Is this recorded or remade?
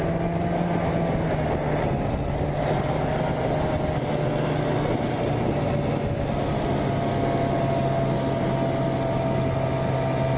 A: recorded